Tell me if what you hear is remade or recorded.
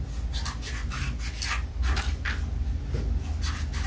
recorded